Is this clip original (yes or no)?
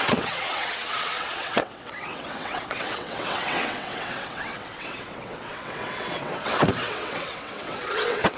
no